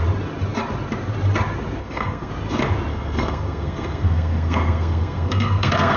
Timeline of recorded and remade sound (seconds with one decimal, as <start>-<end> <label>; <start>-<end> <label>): 0.0-1.8 recorded; 1.8-2.3 remade; 2.3-2.9 recorded; 2.9-6.0 remade